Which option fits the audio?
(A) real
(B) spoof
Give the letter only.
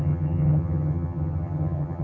B